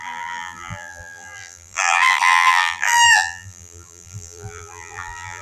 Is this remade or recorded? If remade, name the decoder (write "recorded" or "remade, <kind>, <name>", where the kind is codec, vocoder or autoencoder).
remade, vocoder, BigVGAN v2